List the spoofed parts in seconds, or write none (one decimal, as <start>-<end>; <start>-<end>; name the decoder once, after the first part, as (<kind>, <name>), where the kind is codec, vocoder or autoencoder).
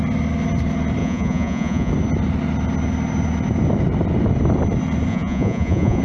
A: 1.0-1.9 (vocoder, Vocos); 5.1-6.0